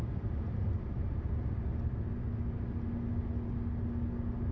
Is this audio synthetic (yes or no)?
no